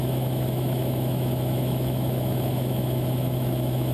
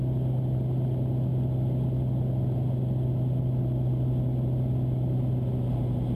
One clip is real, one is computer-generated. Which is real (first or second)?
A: second